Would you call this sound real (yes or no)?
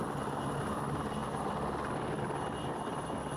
yes